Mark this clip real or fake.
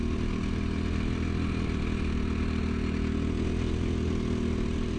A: real